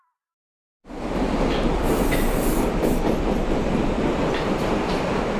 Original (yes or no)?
no